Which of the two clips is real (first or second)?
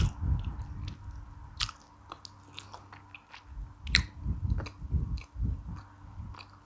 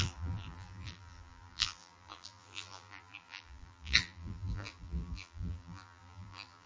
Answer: first